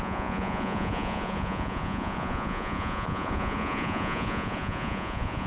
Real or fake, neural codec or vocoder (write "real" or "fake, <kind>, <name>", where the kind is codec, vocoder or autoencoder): fake, vocoder, Vocos